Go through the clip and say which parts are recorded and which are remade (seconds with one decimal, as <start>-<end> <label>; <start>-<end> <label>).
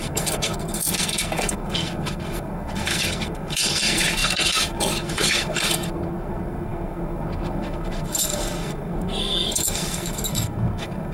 0.0-11.1 remade